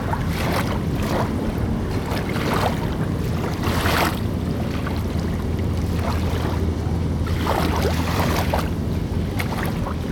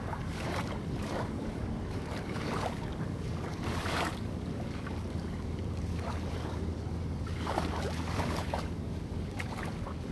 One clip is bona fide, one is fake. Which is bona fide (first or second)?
first